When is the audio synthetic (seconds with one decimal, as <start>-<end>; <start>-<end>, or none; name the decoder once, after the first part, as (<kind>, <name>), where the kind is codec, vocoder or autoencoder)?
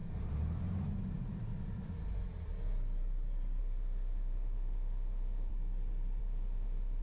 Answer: 3.6-5.5 (autoencoder, DAC-VAE); 6.2-7.0